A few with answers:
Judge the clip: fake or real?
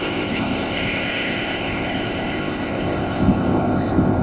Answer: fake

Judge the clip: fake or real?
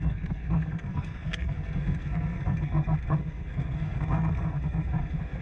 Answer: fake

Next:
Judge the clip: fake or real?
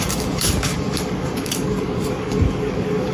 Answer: fake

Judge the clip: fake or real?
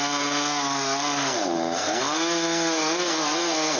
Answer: fake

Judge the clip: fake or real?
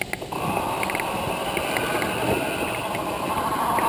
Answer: real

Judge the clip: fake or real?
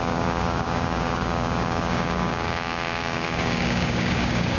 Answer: fake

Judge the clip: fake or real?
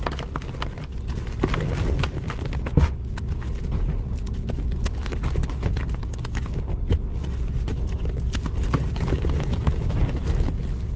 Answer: real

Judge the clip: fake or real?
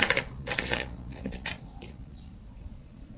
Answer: fake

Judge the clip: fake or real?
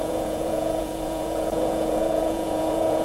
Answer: fake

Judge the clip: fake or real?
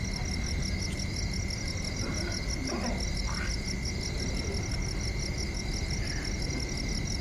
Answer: real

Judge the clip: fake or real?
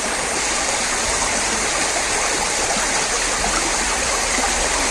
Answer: real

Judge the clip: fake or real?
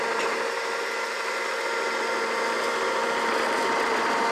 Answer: real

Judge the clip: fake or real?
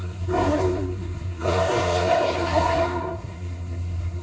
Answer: fake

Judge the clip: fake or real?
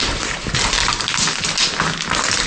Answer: real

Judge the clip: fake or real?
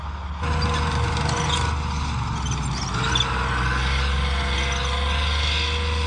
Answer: real